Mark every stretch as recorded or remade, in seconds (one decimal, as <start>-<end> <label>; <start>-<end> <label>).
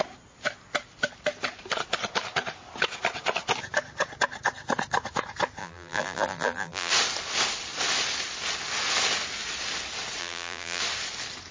0.0-5.6 recorded; 5.6-6.9 remade; 6.9-10.2 recorded; 10.2-10.8 remade; 10.8-11.5 recorded